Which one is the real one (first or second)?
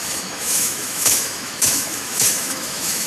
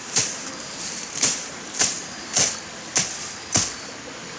second